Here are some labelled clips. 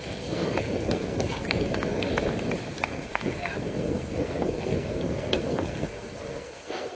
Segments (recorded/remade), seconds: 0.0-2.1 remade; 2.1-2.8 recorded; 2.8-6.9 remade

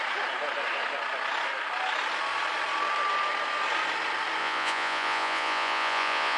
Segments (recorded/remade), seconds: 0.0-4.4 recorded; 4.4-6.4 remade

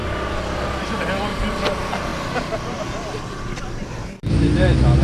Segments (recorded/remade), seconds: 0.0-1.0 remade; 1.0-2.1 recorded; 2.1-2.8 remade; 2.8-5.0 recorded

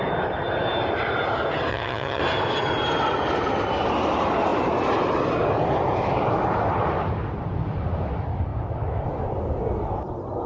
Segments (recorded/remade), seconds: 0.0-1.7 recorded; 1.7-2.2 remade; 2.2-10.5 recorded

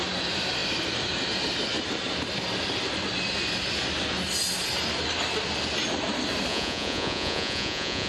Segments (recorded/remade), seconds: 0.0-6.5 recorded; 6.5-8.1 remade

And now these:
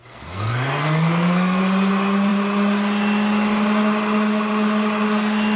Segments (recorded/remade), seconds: 0.0-1.6 remade; 1.6-5.6 recorded